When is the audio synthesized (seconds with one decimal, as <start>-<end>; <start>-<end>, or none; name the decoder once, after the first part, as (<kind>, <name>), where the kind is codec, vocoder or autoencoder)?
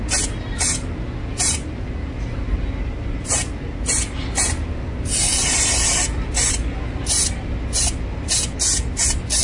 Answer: none